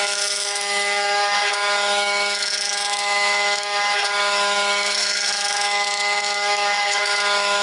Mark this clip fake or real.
fake